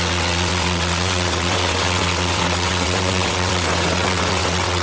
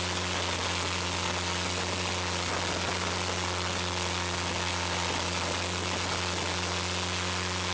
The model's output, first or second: first